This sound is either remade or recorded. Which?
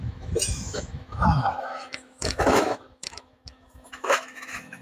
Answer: remade